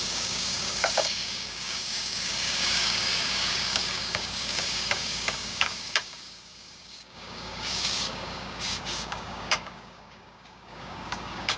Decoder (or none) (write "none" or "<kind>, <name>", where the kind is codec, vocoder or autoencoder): codec, DAC